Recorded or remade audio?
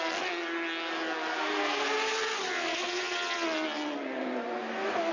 recorded